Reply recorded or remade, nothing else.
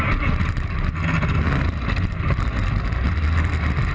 recorded